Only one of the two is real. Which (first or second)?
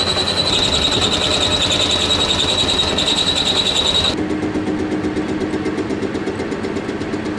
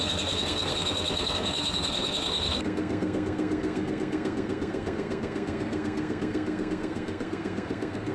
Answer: first